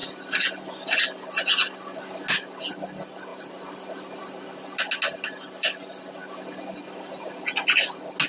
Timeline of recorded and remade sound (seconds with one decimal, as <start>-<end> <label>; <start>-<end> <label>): 0.0-8.3 recorded